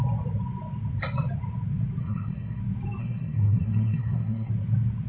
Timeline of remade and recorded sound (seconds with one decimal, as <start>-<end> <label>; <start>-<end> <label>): 0.0-2.0 recorded; 2.0-2.6 remade; 2.6-3.0 recorded; 3.0-4.5 remade; 4.5-5.1 recorded